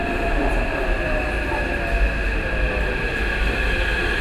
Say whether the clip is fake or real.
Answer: real